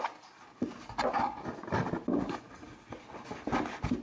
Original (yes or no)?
yes